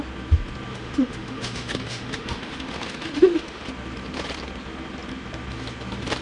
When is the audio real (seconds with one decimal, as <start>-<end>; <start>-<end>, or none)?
0.0-0.7; 3.7-6.2